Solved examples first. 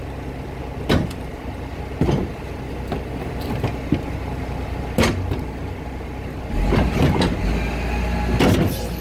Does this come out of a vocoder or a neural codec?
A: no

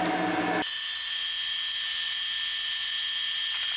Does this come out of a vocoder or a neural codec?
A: no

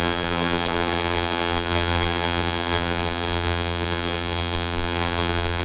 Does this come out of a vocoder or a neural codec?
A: yes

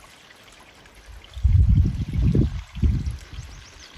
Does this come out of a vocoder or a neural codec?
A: no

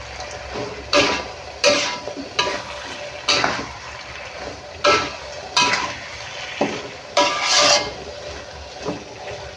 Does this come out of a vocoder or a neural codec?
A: yes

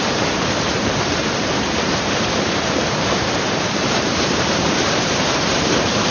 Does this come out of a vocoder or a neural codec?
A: yes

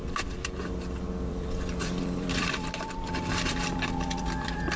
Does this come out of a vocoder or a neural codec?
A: yes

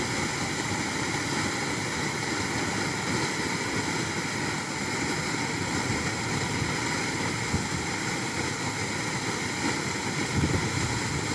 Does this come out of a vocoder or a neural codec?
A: no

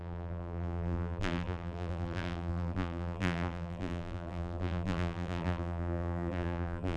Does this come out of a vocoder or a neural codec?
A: yes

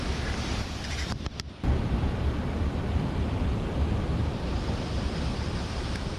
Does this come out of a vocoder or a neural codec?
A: yes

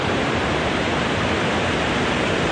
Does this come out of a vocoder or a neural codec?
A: yes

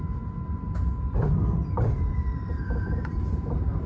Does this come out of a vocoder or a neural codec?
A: yes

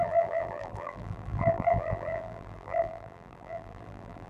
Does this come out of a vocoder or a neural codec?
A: yes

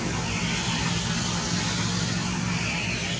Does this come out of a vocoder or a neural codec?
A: no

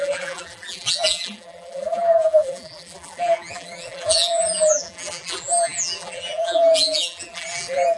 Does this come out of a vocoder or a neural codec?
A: yes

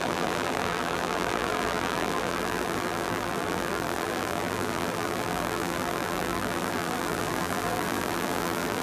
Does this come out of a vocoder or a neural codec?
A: yes